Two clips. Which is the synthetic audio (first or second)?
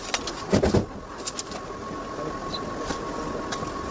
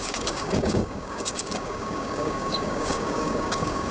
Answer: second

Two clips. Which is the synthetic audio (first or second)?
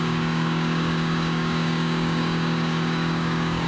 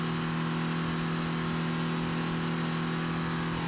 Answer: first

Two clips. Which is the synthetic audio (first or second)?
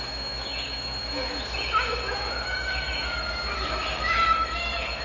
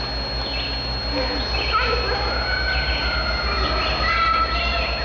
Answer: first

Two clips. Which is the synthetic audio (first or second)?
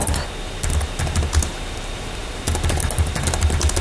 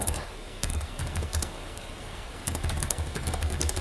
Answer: second